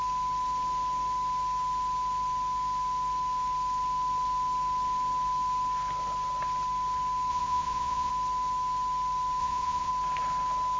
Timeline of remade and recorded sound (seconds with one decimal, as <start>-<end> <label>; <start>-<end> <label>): 0.0-7.3 recorded; 7.3-8.1 remade; 8.1-9.4 recorded; 9.4-9.9 remade; 9.9-10.8 recorded